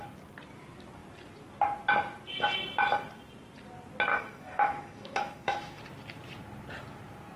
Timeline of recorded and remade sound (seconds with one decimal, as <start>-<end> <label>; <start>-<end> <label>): 0.0-4.1 recorded; 4.1-5.8 remade; 5.8-7.4 recorded